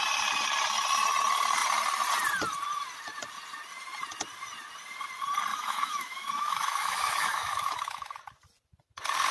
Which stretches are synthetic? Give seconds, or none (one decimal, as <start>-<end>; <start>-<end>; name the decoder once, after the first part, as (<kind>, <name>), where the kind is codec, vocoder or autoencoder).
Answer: 5.5-8.2 (autoencoder, DAC-VAE)